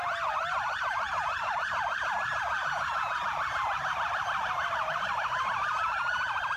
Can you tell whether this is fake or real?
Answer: fake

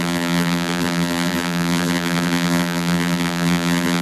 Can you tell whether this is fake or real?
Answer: fake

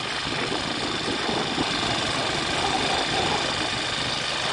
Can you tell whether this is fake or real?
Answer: real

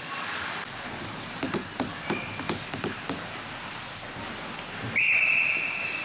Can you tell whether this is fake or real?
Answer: fake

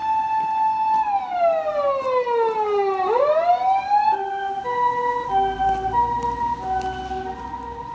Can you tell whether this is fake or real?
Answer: real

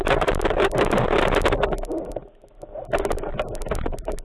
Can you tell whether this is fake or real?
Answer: real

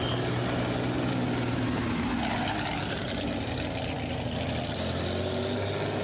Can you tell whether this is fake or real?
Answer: real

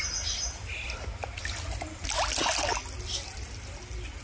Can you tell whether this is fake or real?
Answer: real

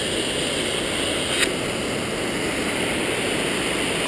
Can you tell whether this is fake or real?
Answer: real